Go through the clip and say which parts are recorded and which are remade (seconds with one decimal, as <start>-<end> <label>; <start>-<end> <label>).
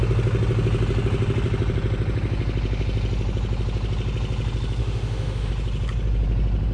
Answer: 0.0-4.8 recorded; 4.8-5.5 remade; 5.5-6.7 recorded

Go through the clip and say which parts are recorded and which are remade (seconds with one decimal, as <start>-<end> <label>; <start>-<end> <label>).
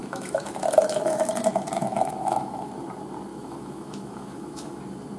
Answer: 0.0-2.7 remade; 2.7-3.3 recorded; 3.3-4.8 remade; 4.8-5.2 recorded